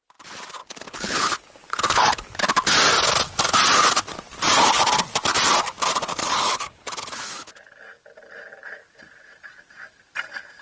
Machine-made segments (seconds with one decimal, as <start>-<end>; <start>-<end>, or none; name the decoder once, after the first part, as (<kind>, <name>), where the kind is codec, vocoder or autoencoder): 0.6-2.3 (codec, HILCodec); 6.1-7.6